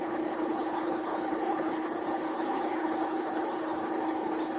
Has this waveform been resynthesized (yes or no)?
yes